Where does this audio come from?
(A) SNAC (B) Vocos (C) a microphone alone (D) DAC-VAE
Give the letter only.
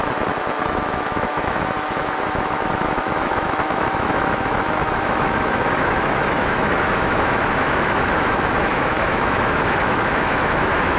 D